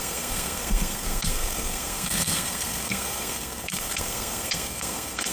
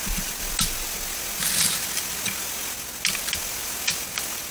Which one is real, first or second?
second